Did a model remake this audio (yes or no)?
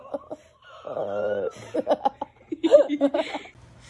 no